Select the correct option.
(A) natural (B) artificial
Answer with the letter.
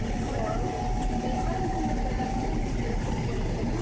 A